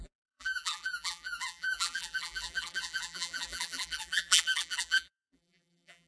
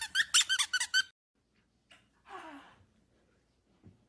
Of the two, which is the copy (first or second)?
first